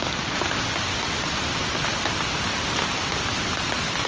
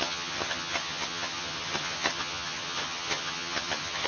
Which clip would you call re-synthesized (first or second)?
second